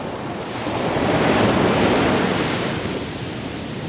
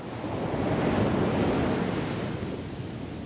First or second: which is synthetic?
first